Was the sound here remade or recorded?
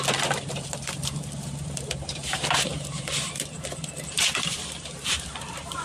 remade